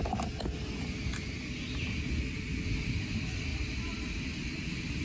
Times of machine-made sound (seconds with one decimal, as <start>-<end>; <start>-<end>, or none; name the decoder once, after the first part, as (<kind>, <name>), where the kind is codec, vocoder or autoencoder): none